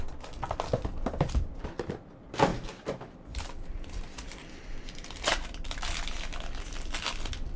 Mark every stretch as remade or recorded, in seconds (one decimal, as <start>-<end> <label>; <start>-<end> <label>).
0.0-0.9 recorded; 0.9-1.6 remade; 1.6-2.5 recorded; 2.5-5.8 remade; 5.8-7.6 recorded